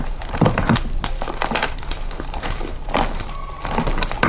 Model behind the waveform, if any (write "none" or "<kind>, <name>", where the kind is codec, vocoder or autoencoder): none